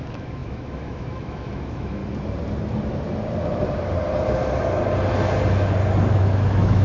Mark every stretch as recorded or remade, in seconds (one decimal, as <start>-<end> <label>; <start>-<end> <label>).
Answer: 0.0-2.0 remade; 2.0-6.1 recorded; 6.1-6.8 remade